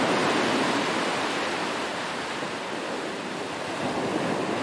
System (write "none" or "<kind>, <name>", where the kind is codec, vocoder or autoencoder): none